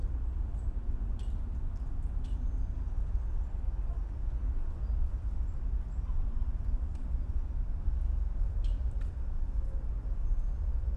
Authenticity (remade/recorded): recorded